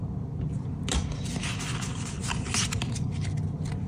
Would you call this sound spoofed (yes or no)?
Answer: no